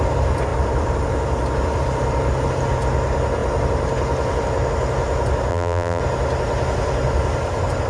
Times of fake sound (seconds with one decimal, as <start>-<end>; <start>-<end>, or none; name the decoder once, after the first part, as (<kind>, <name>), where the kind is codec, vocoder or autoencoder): 5.5-6.0 (vocoder, BigVGAN v2)